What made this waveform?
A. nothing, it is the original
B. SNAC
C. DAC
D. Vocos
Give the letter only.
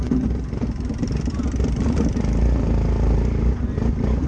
A